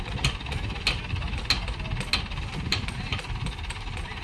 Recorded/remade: recorded